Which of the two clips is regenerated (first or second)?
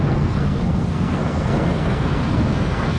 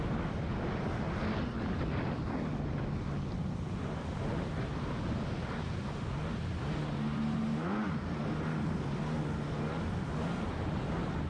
first